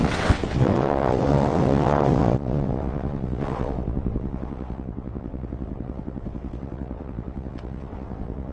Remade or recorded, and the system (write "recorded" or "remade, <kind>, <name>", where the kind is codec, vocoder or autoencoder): remade, vocoder, WaveNeXt